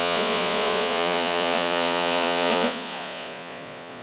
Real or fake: fake